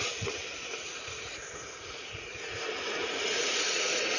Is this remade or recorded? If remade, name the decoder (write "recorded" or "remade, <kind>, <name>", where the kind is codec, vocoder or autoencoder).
remade, vocoder, Vocos